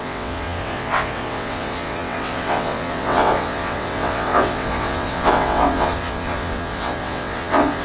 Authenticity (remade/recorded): remade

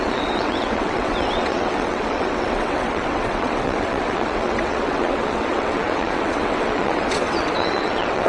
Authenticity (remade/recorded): remade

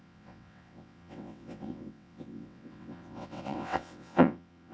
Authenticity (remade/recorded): remade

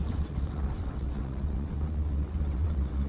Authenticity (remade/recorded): remade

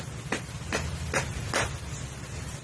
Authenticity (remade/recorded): recorded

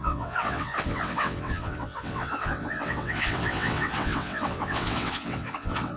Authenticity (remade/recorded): remade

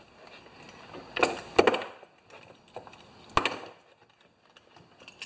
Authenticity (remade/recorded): recorded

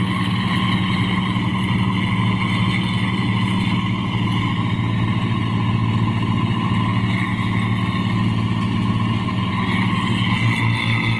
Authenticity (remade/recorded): recorded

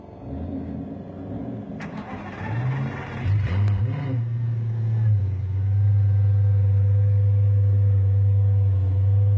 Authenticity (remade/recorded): recorded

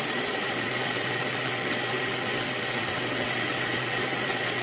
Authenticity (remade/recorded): remade